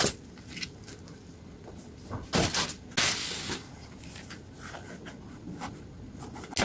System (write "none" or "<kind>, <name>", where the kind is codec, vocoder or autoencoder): none